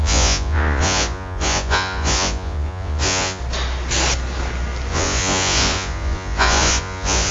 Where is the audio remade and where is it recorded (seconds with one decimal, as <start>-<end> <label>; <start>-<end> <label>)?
0.0-3.4 remade; 3.4-4.9 recorded; 4.9-7.3 remade